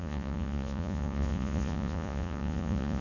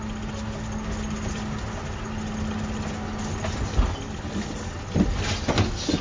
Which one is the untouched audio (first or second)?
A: second